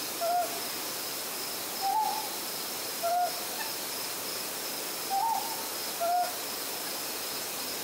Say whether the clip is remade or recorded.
recorded